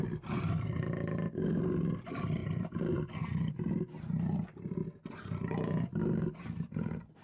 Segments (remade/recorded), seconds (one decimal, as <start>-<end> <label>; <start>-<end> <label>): 0.0-2.4 recorded; 2.4-3.5 remade; 3.5-7.2 recorded